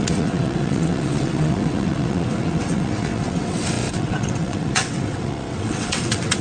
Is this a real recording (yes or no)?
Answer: no